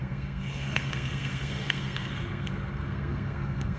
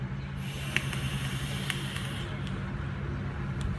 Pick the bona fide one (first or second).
second